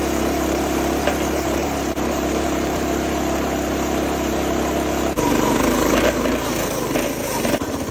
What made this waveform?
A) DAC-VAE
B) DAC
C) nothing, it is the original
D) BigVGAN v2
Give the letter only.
D